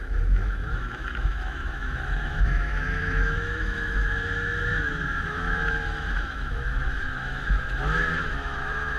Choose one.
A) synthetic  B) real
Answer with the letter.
A